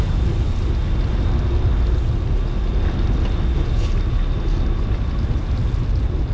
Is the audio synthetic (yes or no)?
no